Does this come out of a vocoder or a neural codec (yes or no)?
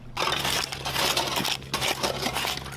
no